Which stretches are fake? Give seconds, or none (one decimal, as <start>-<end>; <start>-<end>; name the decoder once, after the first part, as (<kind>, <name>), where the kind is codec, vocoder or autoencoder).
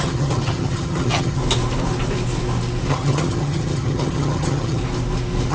0.0-1.4 (vocoder, HiFi-GAN); 2.9-4.8